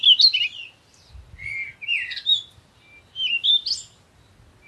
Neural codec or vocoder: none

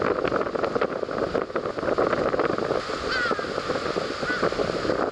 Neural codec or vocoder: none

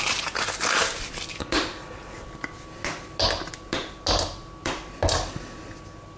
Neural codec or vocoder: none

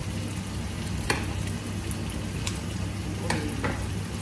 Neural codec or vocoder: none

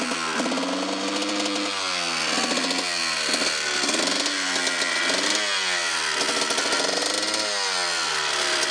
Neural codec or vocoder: none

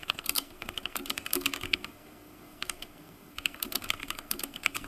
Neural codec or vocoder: codec, SNAC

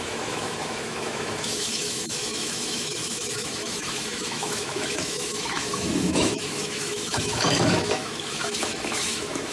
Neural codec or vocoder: autoencoder, DAC-VAE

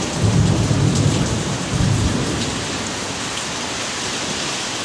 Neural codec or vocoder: none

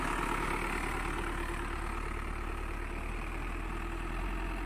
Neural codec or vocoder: none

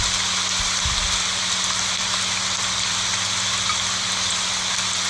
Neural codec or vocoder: none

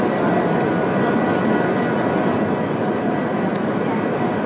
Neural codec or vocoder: none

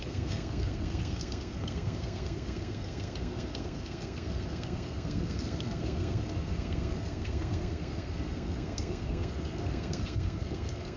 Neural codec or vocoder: codec, SNAC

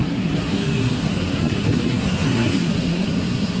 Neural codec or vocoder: codec, SNAC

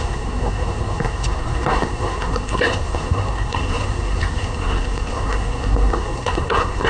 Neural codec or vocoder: codec, SNAC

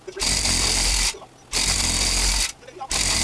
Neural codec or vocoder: none